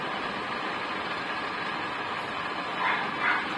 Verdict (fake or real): real